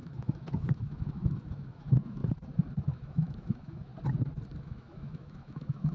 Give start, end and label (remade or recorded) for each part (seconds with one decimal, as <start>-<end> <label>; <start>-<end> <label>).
0.0-2.2 remade; 2.2-2.8 recorded; 2.8-3.9 remade; 3.9-4.6 recorded; 4.6-5.9 remade